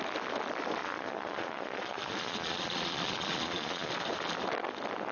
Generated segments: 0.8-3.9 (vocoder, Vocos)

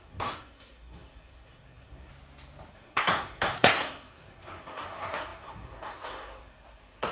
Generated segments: 0.0-2.1 (codec, SNAC); 2.7-7.1

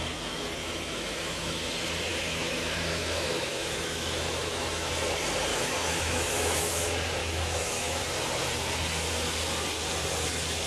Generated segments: 0.6-1.7 (autoencoder, DAC-VAE); 2.1-4.9; 5.5-6.6; 7.2-8.0

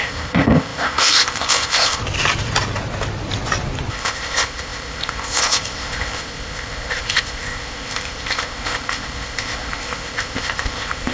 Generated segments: 0.0-2.0 (codec, ZipCodec); 3.9-11.1

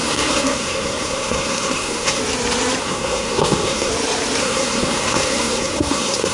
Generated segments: 0.0-2.2 (codec, SNAC); 2.8-3.9; 4.4-6.3

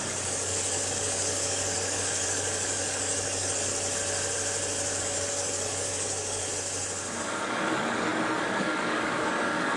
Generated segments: 0.0-3.7 (codec, DAC); 5.0-6.5; 7.2-9.8